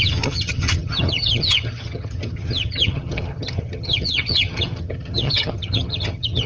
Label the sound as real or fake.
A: fake